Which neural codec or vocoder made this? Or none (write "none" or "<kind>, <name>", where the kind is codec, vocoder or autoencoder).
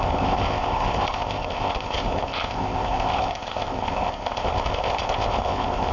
codec, ZipCodec